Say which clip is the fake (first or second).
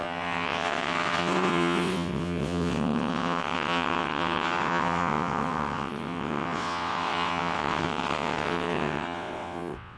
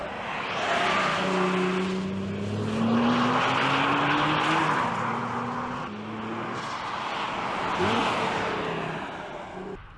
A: first